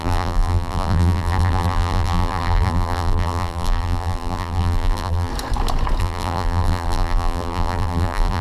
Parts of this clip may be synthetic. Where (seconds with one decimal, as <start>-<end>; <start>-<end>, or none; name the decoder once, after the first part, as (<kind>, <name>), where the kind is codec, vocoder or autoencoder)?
0.0-5.3 (vocoder, BigVGAN v2); 6.0-8.4